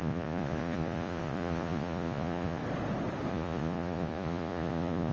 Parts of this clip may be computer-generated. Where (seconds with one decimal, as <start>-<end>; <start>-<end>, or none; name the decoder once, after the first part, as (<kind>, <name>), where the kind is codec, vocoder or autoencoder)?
0.0-2.6 (vocoder, Vocos); 3.3-5.1